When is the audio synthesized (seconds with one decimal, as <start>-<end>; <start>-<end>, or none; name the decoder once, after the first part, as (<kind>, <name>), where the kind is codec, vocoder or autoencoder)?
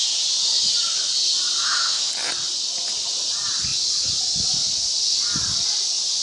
1.6-2.1 (autoencoder, DAC-VAE)